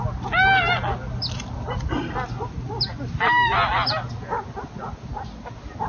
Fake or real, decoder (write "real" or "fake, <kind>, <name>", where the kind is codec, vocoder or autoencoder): real